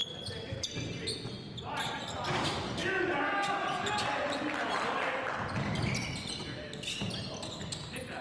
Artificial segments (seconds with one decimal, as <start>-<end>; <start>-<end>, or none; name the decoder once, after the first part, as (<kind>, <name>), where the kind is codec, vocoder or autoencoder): none